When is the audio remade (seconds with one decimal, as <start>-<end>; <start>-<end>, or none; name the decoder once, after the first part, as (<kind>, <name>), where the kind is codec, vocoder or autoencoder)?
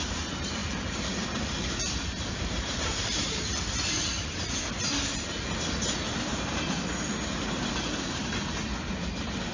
0.6-4.7 (vocoder, BigVGAN v2)